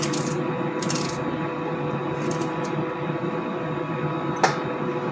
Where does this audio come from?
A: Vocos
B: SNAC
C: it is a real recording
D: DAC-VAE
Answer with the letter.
C